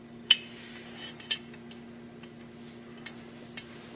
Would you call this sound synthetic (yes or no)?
no